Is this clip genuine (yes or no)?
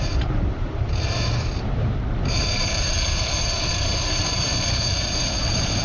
no